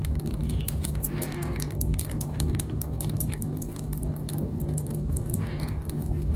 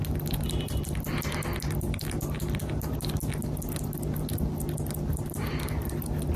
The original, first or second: second